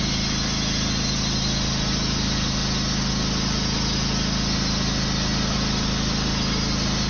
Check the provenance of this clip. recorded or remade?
recorded